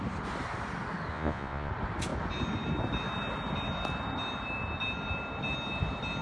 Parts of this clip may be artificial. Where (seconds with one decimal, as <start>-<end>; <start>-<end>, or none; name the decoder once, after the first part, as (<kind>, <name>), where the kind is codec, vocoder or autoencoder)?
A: 1.1-1.7 (vocoder, Vocos)